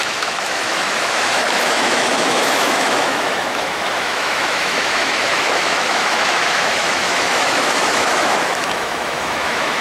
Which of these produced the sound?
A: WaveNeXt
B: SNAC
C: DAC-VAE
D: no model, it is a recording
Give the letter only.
C